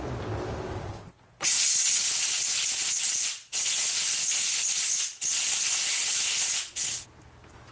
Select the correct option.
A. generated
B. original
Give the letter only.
B